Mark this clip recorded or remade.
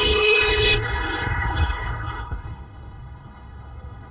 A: remade